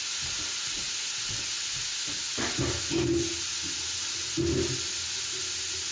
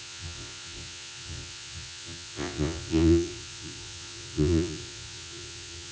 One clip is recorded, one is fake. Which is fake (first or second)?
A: second